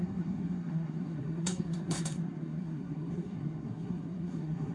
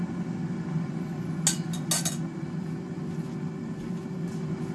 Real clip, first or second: second